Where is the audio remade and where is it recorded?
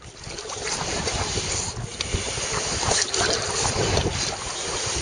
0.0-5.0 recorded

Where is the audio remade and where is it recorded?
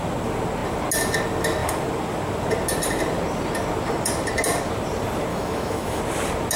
0.0-5.3 recorded; 5.3-6.0 remade; 6.0-6.6 recorded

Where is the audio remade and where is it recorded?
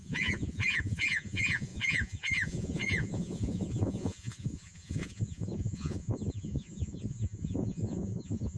0.0-8.6 remade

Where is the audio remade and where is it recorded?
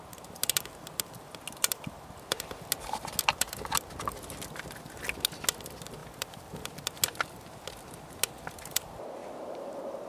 0.0-6.0 recorded; 6.0-6.5 remade; 6.5-9.2 recorded; 9.2-10.1 remade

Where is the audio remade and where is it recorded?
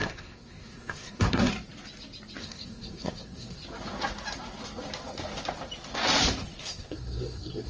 0.0-1.5 remade; 1.5-2.4 recorded; 2.4-3.6 remade; 3.6-6.6 recorded; 6.6-7.7 remade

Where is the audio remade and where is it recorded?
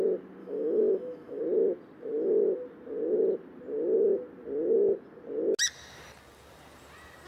0.0-0.4 recorded; 0.4-1.4 remade; 1.4-7.3 recorded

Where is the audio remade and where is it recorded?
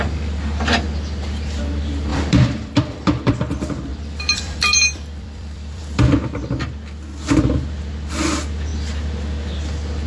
0.0-2.1 recorded; 2.1-3.4 remade; 3.4-3.9 recorded; 3.9-5.8 remade; 5.8-10.1 recorded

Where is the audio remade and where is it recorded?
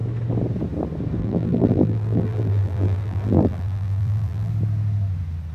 0.0-1.2 recorded; 1.2-4.5 remade; 4.5-5.5 recorded